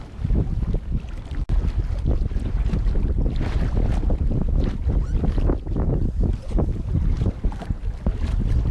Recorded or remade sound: recorded